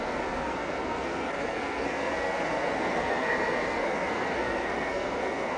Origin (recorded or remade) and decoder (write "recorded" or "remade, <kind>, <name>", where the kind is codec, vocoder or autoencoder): remade, codec, SNAC